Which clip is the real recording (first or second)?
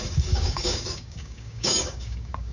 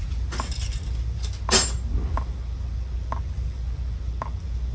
second